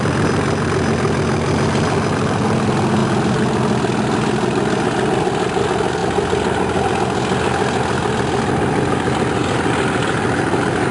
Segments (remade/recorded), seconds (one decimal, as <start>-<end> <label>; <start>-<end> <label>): 0.0-10.9 recorded